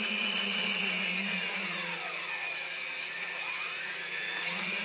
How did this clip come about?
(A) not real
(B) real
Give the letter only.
A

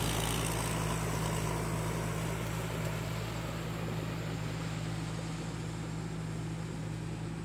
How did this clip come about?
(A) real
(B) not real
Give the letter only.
A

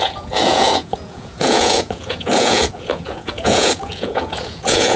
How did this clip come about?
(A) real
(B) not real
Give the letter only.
B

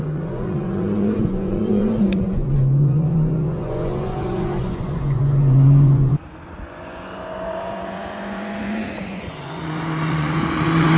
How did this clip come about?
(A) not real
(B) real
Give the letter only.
A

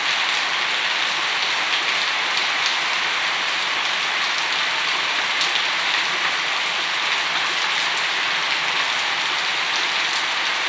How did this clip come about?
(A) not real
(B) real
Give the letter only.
B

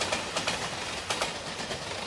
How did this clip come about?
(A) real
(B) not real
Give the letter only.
A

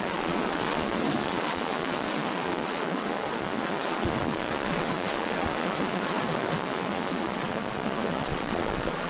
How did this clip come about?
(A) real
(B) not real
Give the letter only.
B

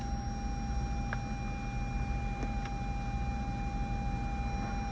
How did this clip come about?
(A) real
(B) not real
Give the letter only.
A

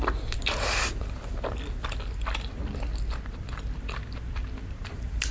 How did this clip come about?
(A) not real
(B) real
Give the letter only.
B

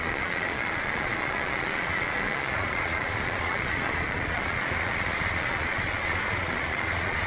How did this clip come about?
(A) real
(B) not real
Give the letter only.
B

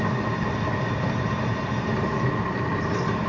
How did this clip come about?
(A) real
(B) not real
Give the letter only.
A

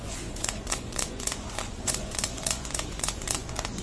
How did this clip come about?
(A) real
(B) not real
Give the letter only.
B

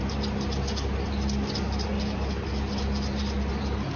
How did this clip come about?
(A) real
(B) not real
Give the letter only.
A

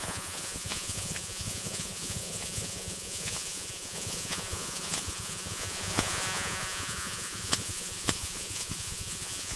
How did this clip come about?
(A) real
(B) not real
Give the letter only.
B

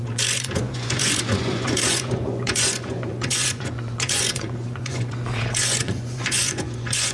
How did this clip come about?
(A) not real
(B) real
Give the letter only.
A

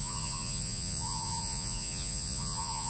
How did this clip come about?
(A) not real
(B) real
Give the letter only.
A